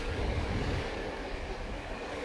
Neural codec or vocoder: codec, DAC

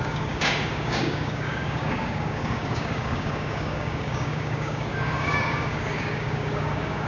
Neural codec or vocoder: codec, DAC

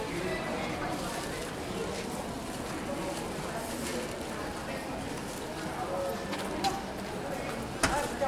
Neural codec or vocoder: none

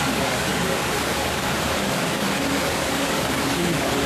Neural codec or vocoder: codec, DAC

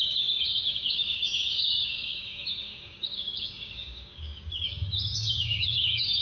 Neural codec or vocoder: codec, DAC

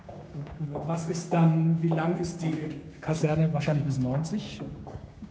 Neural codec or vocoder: codec, DAC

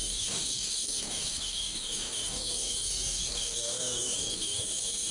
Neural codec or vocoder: codec, DAC